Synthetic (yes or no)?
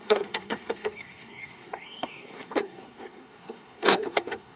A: yes